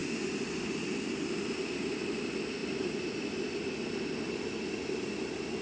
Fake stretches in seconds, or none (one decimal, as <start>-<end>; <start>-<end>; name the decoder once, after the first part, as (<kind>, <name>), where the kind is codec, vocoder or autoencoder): none